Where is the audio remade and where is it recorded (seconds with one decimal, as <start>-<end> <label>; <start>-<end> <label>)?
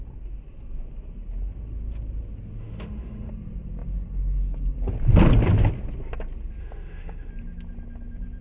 0.0-2.6 recorded; 2.6-3.3 remade; 3.3-6.6 recorded; 6.6-7.3 remade; 7.3-8.4 recorded